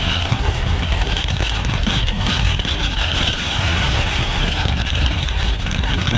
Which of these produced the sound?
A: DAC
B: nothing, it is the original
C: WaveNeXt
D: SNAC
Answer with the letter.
D